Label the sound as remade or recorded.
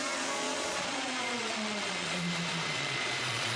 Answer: remade